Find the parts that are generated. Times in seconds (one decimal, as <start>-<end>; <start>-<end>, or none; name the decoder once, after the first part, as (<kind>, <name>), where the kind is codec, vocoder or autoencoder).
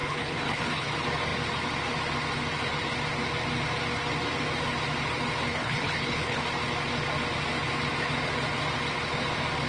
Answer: 0.0-0.9 (codec, HILCodec); 5.5-6.4